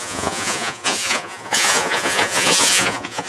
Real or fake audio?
fake